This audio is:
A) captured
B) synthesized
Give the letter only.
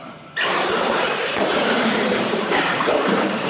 B